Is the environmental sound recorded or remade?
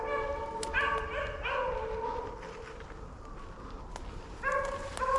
recorded